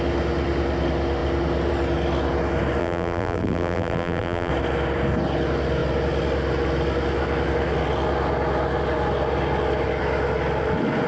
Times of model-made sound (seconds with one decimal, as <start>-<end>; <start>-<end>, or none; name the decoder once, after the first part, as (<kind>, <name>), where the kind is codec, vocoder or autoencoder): 2.8-4.5 (vocoder, BigVGAN v2)